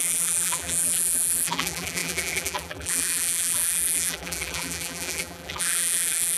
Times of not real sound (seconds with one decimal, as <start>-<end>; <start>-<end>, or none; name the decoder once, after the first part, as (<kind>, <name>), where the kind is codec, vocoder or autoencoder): 0.0-6.4 (vocoder, BigVGAN v2)